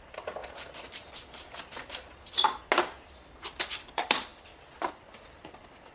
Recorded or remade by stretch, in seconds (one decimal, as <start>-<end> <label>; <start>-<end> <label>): 0.0-0.4 remade; 0.4-3.9 recorded; 3.9-4.3 remade; 4.3-4.9 recorded; 4.9-5.9 remade